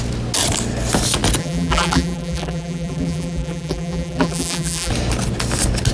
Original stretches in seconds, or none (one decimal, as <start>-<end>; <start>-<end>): 0.0-1.4; 4.9-5.9